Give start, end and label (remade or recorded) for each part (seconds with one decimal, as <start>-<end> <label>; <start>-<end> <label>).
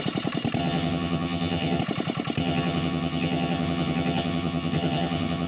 0.0-0.6 recorded; 0.6-1.8 remade; 1.8-2.4 recorded; 2.4-5.5 remade